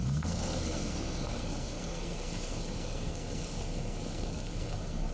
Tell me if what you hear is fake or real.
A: fake